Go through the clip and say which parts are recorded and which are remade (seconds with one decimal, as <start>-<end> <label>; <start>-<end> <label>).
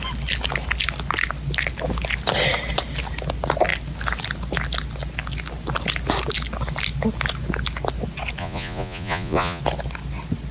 0.0-8.4 recorded; 8.4-9.6 remade; 9.6-10.5 recorded